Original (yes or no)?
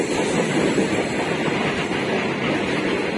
yes